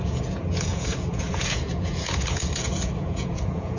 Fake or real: fake